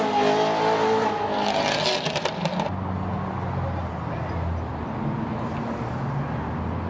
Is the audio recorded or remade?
recorded